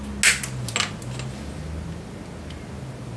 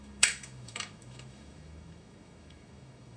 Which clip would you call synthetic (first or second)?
second